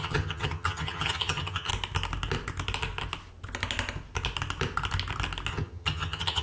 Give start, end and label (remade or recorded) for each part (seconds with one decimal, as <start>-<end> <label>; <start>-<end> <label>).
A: 0.0-1.7 remade; 1.7-5.5 recorded; 5.5-6.4 remade